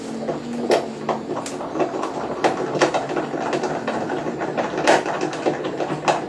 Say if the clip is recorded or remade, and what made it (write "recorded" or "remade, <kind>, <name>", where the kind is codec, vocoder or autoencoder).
recorded